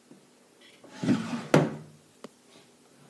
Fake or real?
real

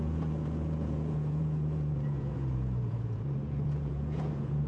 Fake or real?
fake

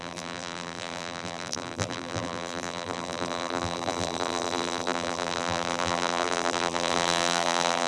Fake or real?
fake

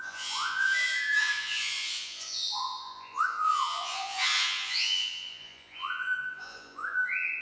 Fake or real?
fake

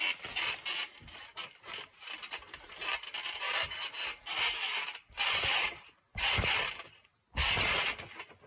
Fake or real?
real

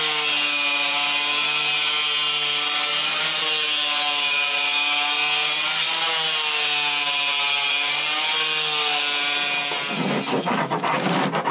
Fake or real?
real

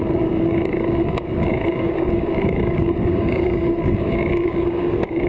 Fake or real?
fake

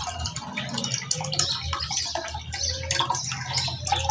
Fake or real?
real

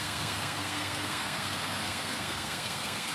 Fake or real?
fake